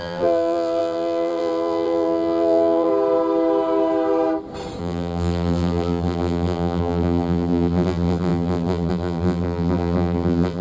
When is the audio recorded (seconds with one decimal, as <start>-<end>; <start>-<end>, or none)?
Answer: 2.9-4.8